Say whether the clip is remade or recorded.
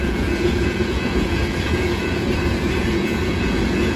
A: remade